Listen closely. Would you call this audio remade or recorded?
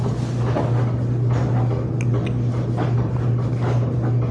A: recorded